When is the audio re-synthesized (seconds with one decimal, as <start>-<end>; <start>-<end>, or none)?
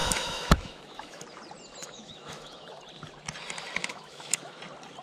0.0-1.2; 1.8-2.8; 3.8-4.6